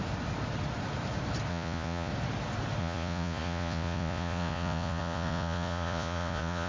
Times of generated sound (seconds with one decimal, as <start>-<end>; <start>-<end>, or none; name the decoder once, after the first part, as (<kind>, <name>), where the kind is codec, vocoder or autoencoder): 1.5-2.1 (vocoder, Vocos); 2.8-6.7